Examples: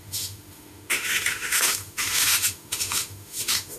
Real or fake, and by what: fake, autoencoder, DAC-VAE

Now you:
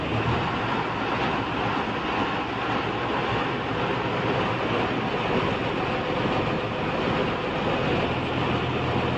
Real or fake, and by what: real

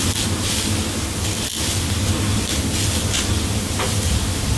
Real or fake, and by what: real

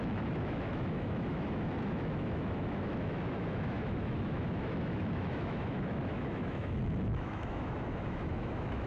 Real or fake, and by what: fake, autoencoder, DAC-VAE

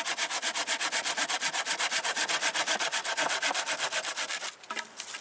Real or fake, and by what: real